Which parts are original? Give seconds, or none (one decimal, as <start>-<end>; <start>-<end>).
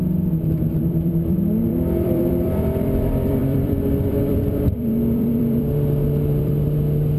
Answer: 0.0-0.5